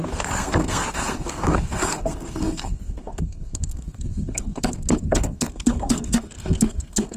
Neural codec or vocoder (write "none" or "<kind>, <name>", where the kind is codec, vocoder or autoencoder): codec, SNAC